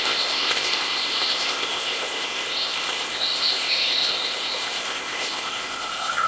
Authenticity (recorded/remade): remade